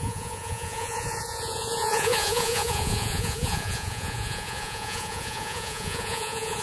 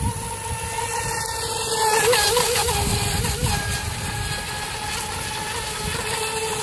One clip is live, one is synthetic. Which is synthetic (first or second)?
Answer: first